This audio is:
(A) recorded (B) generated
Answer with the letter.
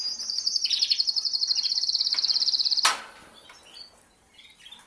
A